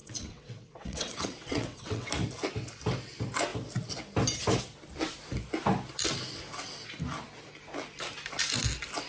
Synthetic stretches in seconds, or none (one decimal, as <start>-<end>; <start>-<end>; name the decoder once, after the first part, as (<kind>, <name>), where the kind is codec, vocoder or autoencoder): 0.0-2.1 (vocoder, WaveNeXt)